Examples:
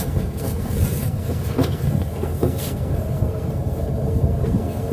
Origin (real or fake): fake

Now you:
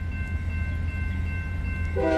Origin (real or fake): real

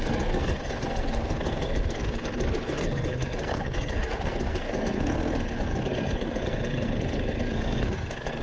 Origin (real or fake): fake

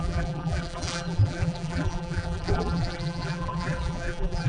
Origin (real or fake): fake